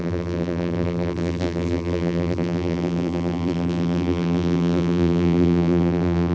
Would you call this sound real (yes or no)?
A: no